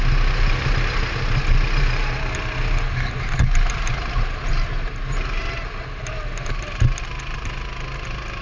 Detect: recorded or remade recorded